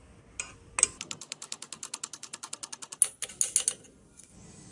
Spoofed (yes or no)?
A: no